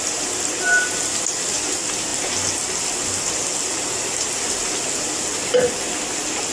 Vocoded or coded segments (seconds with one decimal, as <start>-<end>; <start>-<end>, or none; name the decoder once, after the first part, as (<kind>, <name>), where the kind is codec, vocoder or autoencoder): none